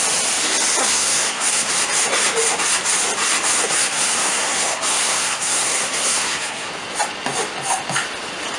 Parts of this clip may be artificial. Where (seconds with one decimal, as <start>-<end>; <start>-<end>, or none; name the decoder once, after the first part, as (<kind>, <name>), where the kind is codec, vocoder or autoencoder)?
0.8-1.7 (codec, SNAC); 3.6-6.7